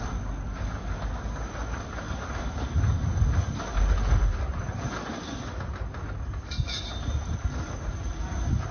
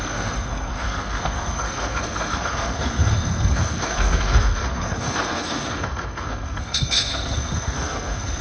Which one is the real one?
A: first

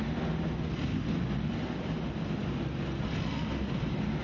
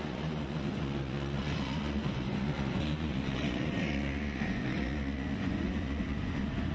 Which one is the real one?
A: first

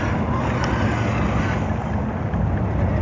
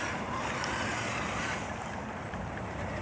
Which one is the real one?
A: first